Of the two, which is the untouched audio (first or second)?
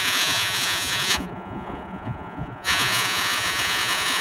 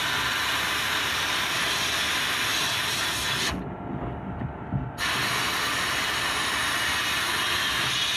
second